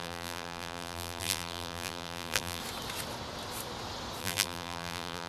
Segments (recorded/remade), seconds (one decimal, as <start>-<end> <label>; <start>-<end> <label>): 0.0-2.6 remade; 2.6-4.2 recorded; 4.2-5.3 remade